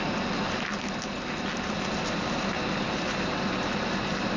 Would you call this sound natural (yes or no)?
yes